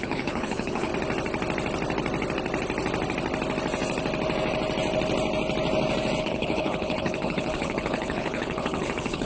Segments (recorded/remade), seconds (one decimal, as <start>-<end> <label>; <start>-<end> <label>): 0.0-0.9 remade; 0.9-6.2 recorded; 6.2-9.3 remade